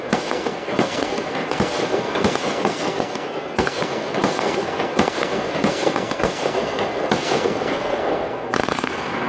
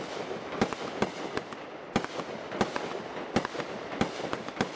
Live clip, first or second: second